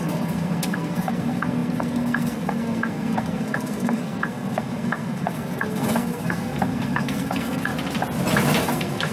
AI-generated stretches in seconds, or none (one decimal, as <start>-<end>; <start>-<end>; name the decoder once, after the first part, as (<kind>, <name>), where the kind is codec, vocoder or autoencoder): 0.0-7.7 (codec, SNAC); 8.6-9.1